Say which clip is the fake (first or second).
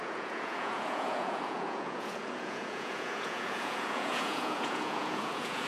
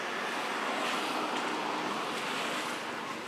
first